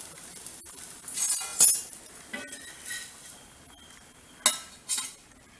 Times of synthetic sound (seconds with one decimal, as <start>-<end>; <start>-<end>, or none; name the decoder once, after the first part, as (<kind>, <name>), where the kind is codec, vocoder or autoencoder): none